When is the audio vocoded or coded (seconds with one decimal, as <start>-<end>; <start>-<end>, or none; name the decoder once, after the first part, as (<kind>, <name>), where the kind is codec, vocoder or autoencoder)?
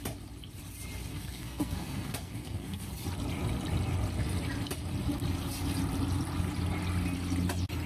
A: 1.1-2.9 (codec, SNAC)